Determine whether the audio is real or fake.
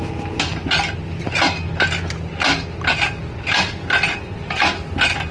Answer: real